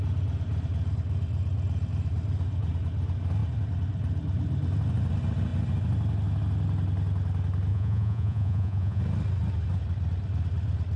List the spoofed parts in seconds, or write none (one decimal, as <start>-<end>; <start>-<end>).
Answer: 7.7-9.0